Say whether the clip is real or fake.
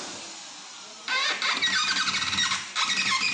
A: real